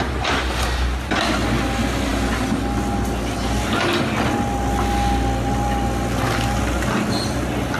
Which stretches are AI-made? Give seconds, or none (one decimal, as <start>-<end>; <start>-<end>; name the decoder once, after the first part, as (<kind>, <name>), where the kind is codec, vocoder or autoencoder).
none

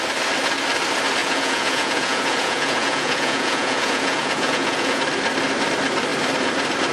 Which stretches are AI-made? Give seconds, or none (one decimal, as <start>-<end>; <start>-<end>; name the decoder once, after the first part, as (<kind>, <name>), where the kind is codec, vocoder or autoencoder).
1.2-5.0 (vocoder, Vocos)

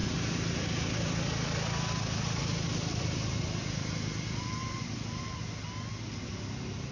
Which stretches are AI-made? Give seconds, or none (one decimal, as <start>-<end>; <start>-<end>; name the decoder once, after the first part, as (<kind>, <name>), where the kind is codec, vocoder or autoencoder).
none

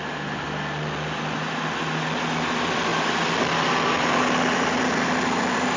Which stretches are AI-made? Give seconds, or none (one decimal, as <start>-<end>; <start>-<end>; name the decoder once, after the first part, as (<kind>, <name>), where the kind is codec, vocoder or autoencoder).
none

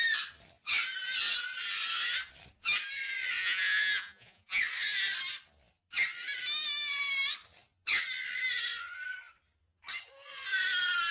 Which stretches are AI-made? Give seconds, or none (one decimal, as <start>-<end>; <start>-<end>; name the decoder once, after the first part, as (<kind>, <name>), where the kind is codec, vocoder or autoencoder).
3.4-4.6 (vocoder, Vocos)